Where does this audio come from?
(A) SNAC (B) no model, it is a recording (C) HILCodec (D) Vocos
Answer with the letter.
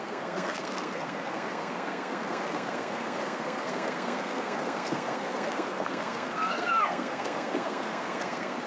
A